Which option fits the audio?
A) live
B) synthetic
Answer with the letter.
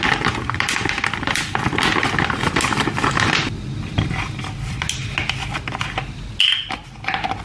A